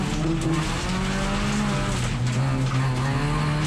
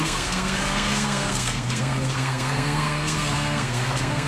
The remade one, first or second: second